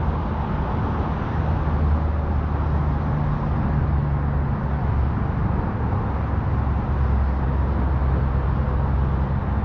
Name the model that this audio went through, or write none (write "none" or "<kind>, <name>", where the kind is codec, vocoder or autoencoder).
none